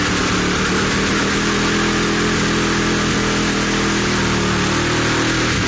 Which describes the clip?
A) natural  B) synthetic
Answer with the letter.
A